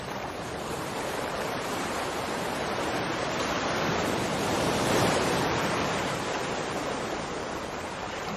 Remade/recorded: remade